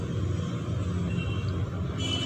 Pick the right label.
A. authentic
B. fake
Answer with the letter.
A